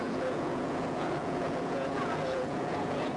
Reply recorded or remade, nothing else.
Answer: remade